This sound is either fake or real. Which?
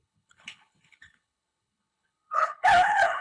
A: fake